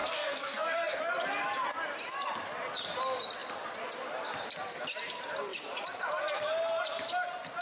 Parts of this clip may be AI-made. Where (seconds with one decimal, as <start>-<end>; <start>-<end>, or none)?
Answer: 0.0-1.0